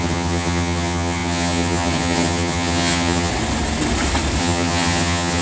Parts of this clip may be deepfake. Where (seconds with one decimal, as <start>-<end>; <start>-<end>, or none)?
0.0-3.3; 4.4-5.4